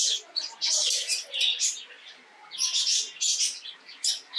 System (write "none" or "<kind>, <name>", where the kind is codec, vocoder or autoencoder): none